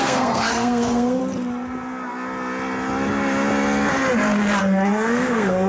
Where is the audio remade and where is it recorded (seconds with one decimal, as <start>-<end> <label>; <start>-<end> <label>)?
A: 0.0-1.2 remade; 1.2-4.6 recorded; 4.6-5.7 remade